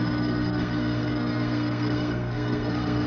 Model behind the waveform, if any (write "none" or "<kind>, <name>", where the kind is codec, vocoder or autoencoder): codec, SNAC